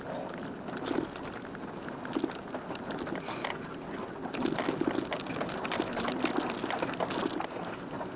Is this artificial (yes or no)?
no